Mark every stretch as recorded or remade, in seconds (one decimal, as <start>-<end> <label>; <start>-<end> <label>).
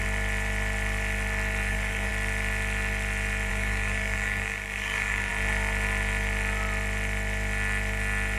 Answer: 0.0-1.7 recorded; 1.7-2.1 remade; 2.1-3.5 recorded; 3.5-5.3 remade; 5.3-8.4 recorded